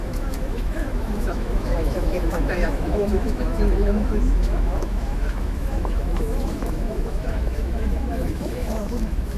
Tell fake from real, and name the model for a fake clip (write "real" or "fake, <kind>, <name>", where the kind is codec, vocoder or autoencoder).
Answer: fake, autoencoder, DAC-VAE